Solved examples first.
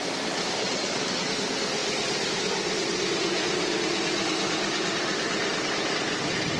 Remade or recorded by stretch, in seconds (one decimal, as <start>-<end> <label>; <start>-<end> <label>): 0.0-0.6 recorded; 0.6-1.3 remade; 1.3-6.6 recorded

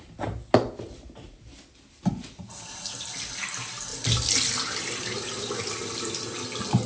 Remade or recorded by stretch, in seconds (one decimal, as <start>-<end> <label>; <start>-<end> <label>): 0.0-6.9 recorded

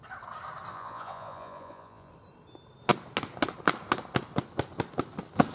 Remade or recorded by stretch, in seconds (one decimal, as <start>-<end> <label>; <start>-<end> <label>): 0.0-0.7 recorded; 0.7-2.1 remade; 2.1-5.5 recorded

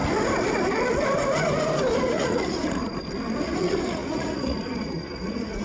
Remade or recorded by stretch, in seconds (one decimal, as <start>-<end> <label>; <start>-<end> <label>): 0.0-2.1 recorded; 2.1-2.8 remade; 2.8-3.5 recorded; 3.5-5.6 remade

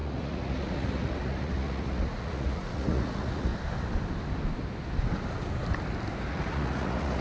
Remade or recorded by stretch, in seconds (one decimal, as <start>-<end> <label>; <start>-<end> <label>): 0.0-3.5 remade; 3.5-6.3 recorded; 6.3-7.2 remade

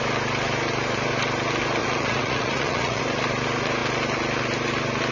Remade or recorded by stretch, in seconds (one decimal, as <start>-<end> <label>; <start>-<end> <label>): 0.0-1.8 recorded; 1.8-3.0 remade; 3.0-5.1 recorded